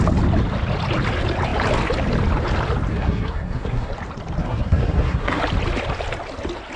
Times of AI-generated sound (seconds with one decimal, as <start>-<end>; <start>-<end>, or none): 2.9-3.9; 4.4-5.4